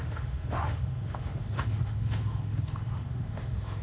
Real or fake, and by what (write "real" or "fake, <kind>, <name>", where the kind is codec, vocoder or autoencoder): fake, autoencoder, DAC-VAE